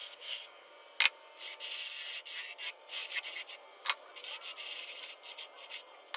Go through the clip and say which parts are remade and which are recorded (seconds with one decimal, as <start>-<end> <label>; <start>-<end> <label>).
0.0-0.7 remade; 0.7-6.2 recorded